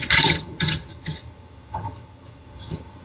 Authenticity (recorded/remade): remade